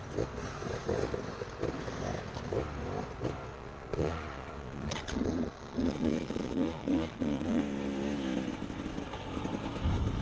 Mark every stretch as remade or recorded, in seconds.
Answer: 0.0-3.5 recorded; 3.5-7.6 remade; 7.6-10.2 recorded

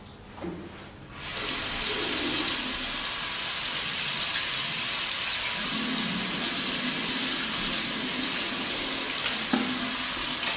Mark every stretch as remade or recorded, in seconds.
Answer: 0.0-10.6 recorded

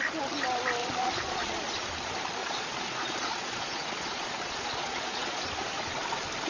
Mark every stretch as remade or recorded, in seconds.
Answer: 0.0-0.8 recorded; 0.8-1.6 remade; 1.6-2.4 recorded; 2.4-5.4 remade; 5.4-6.5 recorded

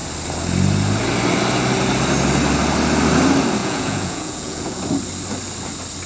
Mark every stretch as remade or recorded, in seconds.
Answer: 0.0-3.6 recorded; 3.6-4.8 remade; 4.8-6.1 recorded

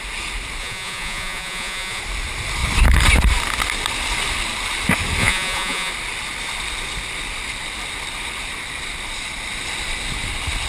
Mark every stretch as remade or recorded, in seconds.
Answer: 0.0-0.6 recorded; 0.6-2.0 remade; 2.0-5.2 recorded; 5.2-5.9 remade; 5.9-10.7 recorded

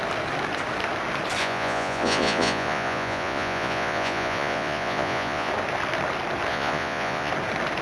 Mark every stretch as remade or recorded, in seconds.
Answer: 0.0-1.4 recorded; 1.4-5.5 remade; 5.5-6.5 recorded; 6.5-7.3 remade; 7.3-7.8 recorded

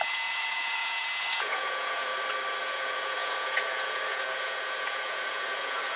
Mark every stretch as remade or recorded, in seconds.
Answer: 0.0-2.1 remade; 2.1-2.6 recorded; 2.6-6.0 remade